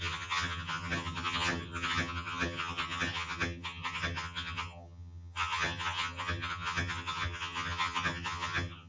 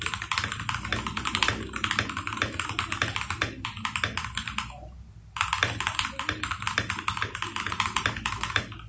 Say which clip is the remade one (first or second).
first